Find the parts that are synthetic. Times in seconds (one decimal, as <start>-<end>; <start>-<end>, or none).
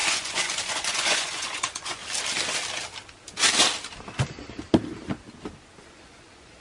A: 0.0-2.0; 5.8-6.6